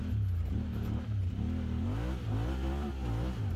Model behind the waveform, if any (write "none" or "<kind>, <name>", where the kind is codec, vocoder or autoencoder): none